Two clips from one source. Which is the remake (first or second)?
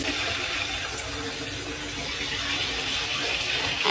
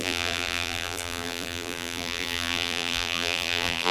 second